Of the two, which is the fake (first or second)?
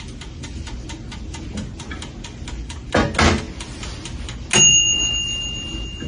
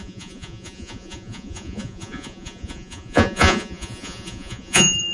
second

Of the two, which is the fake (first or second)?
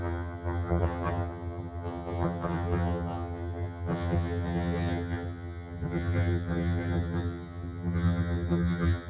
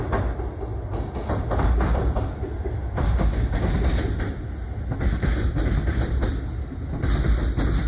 first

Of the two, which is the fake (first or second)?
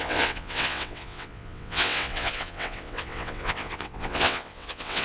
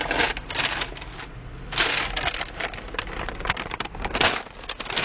first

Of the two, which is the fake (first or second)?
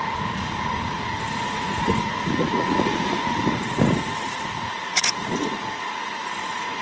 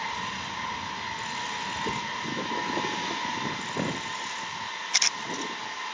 first